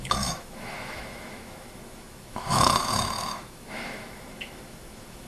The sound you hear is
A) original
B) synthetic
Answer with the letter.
B